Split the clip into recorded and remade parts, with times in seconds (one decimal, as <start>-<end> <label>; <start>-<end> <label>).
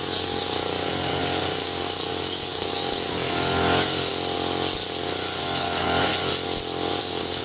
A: 0.0-4.1 remade; 4.1-5.4 recorded; 5.4-6.1 remade; 6.1-7.0 recorded; 7.0-7.4 remade